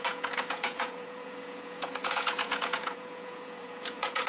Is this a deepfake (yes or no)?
yes